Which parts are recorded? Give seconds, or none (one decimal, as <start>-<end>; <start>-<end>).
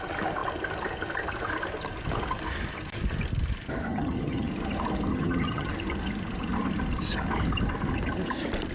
0.0-3.9; 4.5-5.1; 5.7-8.7